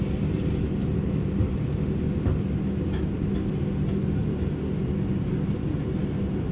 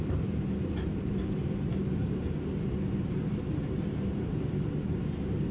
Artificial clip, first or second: second